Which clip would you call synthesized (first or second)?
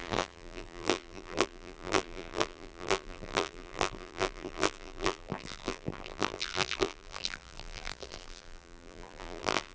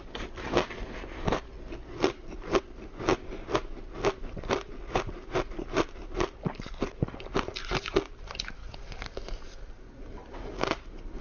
first